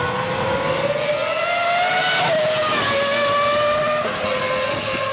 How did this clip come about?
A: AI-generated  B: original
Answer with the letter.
B